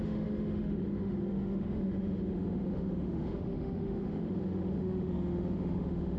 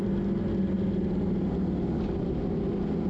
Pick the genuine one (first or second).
second